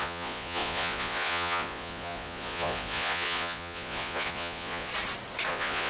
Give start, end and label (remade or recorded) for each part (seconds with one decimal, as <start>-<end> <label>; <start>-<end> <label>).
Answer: 0.0-4.9 remade; 4.9-5.5 recorded; 5.5-5.9 remade